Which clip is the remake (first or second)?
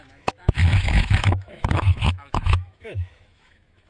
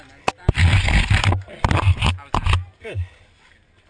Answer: first